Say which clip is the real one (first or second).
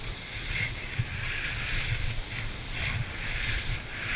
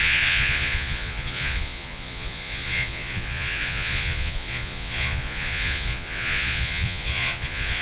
first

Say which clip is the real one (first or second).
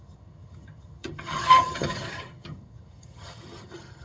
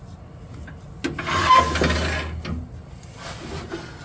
second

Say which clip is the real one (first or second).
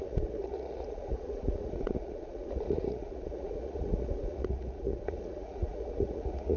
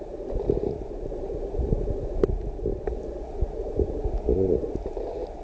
second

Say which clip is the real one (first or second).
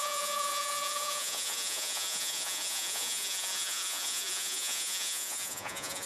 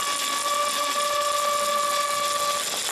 second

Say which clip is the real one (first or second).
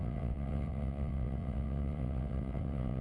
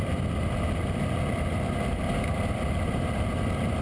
second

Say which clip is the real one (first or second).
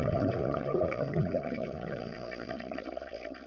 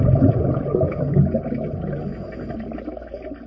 second